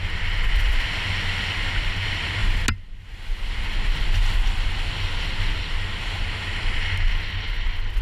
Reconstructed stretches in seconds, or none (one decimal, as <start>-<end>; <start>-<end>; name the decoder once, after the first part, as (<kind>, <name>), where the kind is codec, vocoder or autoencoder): none